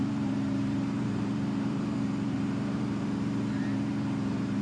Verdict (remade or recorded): remade